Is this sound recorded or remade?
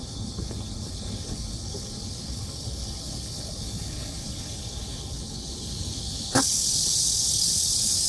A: remade